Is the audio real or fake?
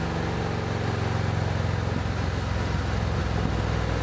real